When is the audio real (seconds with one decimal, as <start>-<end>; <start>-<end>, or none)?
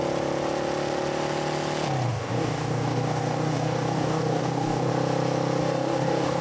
0.0-2.1; 4.9-5.6